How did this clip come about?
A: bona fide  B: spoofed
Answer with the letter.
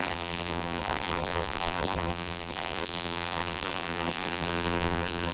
B